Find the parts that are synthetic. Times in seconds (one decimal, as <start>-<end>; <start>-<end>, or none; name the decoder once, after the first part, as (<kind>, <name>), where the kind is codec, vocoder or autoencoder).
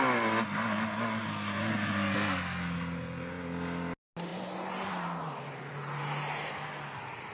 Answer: 4.3-5.7 (vocoder, BigVGAN v2)